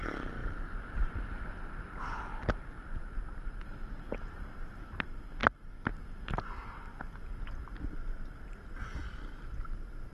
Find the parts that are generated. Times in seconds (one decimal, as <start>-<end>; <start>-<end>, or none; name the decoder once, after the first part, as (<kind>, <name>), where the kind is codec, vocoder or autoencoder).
none